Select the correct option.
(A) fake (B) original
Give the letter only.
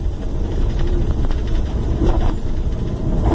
A